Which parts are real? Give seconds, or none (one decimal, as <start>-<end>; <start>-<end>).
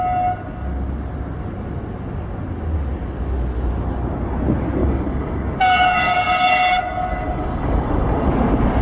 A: 0.0-4.8; 8.3-8.8